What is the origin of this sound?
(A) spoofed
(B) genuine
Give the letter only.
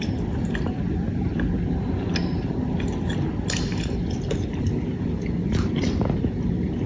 B